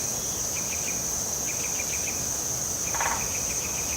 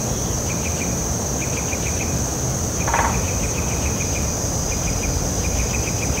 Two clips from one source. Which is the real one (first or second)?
first